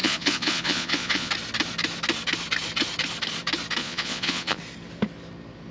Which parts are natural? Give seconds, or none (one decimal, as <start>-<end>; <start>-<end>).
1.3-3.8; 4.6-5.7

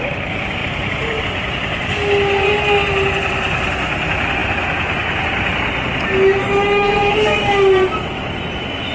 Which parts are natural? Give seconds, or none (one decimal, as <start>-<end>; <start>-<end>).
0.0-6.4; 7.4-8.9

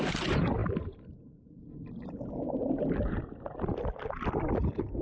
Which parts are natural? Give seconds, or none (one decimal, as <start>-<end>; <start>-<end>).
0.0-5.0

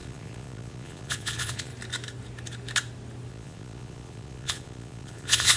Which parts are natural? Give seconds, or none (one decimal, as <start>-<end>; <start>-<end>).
1.7-3.3

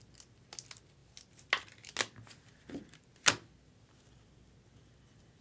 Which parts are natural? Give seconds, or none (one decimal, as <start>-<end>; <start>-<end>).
0.0-5.4

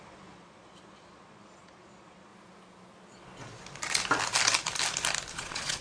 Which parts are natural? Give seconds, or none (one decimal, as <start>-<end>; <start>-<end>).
2.3-5.3

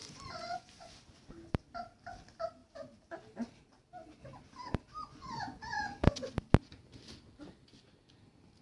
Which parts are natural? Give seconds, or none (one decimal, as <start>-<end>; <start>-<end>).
0.9-5.0; 6.3-8.6

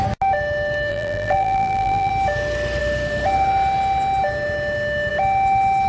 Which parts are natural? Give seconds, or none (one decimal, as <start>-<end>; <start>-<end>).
0.0-0.9; 2.1-5.9